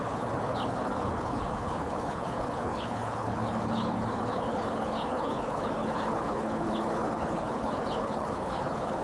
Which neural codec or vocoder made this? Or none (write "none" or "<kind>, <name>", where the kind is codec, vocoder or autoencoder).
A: codec, HILCodec